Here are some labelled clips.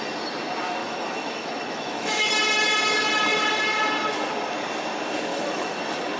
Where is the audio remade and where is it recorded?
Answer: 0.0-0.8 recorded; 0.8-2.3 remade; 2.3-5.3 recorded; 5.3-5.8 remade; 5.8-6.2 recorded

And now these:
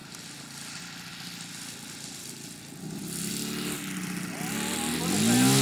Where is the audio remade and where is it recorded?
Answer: 0.0-5.6 recorded

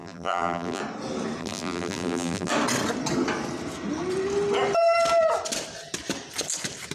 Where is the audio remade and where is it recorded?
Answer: 0.0-0.8 remade; 0.8-1.4 recorded; 1.4-2.5 remade; 2.5-6.9 recorded

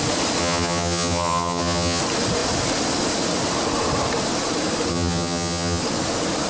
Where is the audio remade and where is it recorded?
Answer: 0.0-0.4 recorded; 0.4-2.0 remade; 2.0-4.9 recorded; 4.9-5.8 remade; 5.8-6.5 recorded